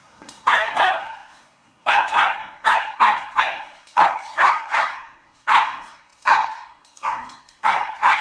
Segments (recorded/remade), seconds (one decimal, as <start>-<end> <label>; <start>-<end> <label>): 0.0-8.2 remade